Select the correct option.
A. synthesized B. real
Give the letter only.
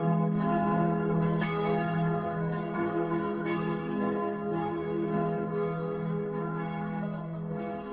A